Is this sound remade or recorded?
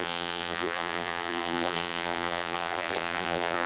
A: remade